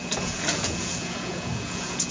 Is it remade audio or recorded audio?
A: remade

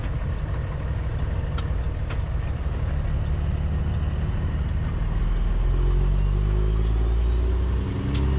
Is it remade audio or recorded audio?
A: recorded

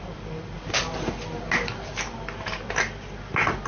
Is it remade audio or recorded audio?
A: recorded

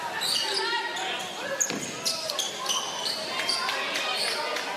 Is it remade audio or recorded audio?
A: recorded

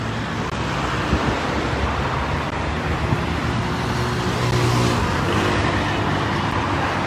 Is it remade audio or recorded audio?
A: recorded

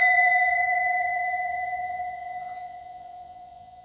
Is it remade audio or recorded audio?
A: remade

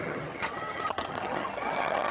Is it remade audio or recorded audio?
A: remade